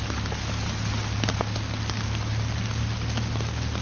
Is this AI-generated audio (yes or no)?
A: no